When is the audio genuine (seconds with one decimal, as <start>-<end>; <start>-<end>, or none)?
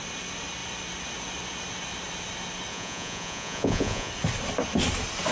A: 0.0-2.7; 4.1-5.3